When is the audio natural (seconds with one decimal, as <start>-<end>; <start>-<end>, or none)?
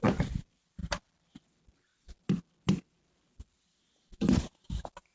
0.0-5.1